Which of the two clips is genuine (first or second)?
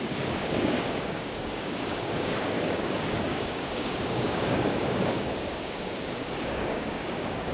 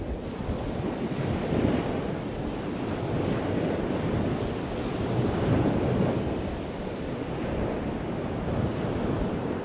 second